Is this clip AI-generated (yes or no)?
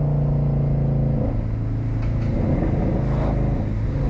no